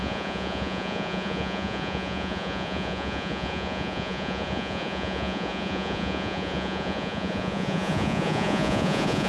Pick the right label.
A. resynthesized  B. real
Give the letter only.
A